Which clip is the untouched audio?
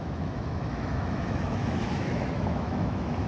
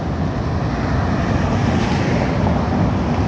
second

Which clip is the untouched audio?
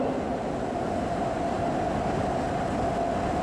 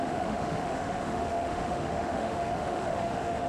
first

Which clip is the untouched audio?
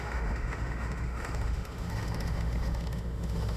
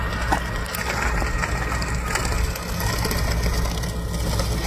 second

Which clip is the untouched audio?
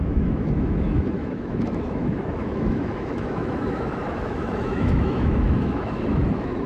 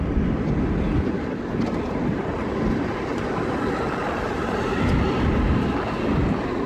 second